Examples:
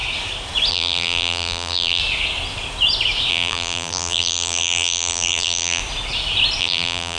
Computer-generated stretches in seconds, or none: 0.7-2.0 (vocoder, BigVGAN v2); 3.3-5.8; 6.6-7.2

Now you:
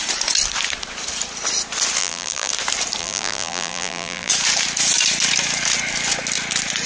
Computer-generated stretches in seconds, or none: 2.0-2.5 (vocoder, BigVGAN v2); 3.0-4.3

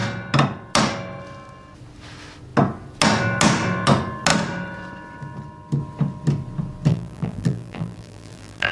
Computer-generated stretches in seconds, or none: 6.9-8.7 (vocoder, BigVGAN v2)

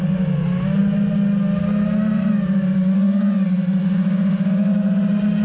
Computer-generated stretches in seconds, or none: none

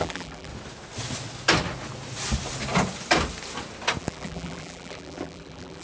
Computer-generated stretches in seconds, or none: 0.0-0.5 (vocoder, BigVGAN v2); 4.0-5.8

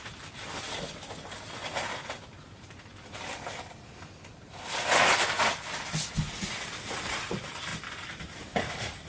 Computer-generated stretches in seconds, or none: none

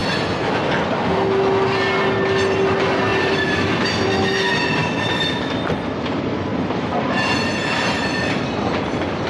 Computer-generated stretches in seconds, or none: 3.1-3.8 (vocoder, BigVGAN v2); 4.8-5.6; 6.5-8.5

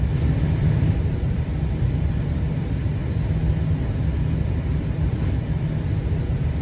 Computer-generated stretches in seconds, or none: 0.0-1.5 (vocoder, BigVGAN v2); 2.1-3.0; 5.2-6.6